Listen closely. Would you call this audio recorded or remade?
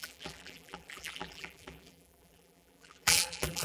remade